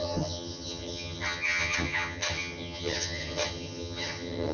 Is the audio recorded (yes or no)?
no